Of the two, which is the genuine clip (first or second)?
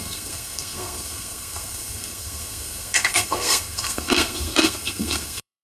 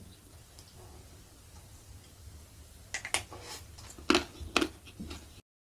second